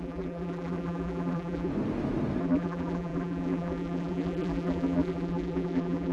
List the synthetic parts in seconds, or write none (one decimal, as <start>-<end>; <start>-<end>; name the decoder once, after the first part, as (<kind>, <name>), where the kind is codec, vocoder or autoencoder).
0.0-1.7 (vocoder, BigVGAN v2); 2.4-6.1